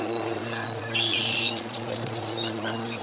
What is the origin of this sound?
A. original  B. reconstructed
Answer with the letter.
B